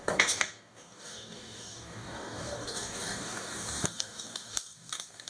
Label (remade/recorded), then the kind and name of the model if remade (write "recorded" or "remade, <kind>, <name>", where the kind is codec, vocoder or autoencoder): remade, codec, DAC